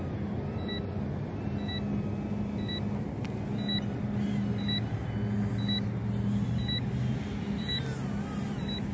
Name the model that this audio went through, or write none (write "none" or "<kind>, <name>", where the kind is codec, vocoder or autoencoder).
none